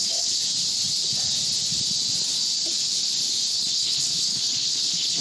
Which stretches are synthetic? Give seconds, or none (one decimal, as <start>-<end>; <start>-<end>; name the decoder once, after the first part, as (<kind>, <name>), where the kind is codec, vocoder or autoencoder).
0.0-0.4 (codec, HILCodec); 3.5-5.2